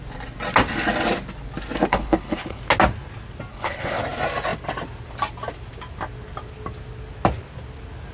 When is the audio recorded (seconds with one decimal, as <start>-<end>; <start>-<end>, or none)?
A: 0.0-1.9; 2.6-3.5; 4.0-8.1